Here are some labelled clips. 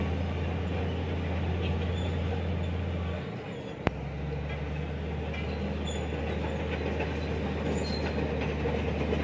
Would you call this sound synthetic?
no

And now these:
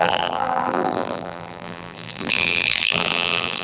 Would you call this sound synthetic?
yes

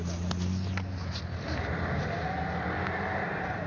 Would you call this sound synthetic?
no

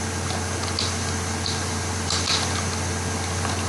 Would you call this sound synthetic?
no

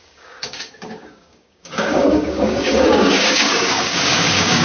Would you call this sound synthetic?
yes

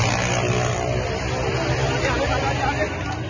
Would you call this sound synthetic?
no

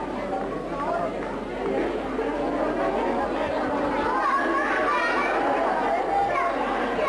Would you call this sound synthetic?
no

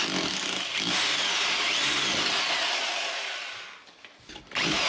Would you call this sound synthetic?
no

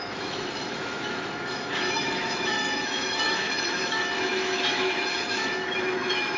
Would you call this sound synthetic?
yes